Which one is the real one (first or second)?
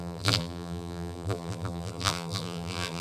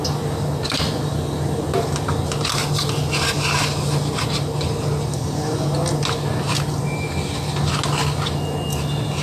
second